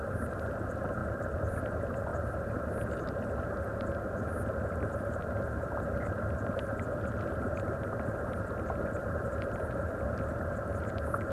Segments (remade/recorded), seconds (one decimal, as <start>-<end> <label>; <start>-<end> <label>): 0.0-1.0 recorded; 1.0-1.6 remade; 1.6-3.7 recorded; 3.7-5.2 remade; 5.2-9.0 recorded; 9.0-10.1 remade; 10.1-11.3 recorded